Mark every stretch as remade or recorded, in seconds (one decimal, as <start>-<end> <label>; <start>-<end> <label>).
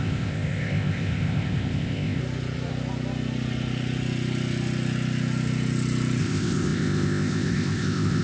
0.0-2.2 remade; 2.2-6.2 recorded; 6.2-8.2 remade